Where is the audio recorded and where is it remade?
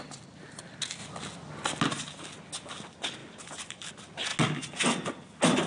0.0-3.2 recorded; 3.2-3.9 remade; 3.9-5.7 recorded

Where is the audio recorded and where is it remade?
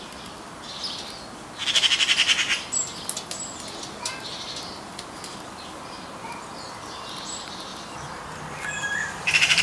0.0-7.7 recorded; 7.7-9.6 remade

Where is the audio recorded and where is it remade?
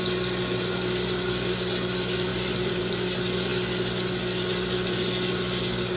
0.0-2.3 recorded; 2.3-2.8 remade; 2.8-6.0 recorded